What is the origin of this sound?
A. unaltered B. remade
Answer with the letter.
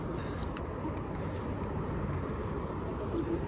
A